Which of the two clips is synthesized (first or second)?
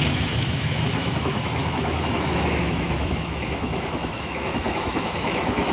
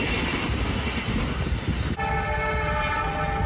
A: first